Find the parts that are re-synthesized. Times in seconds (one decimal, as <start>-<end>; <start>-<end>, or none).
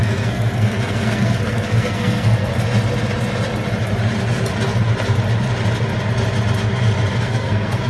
0.0-2.5; 7.2-7.9